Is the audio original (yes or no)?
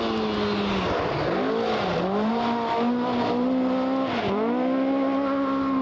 yes